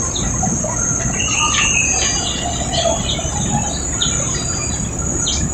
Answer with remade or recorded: recorded